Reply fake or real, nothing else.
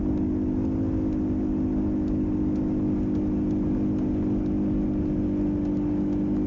real